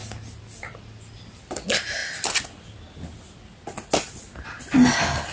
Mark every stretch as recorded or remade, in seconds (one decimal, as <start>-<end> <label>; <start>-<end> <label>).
0.0-5.3 recorded